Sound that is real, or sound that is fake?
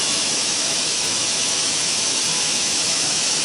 fake